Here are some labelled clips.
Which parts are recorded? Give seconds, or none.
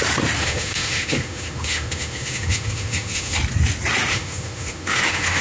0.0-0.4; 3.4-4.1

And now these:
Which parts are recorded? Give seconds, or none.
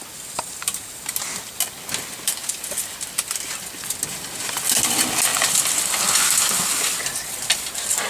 0.0-8.1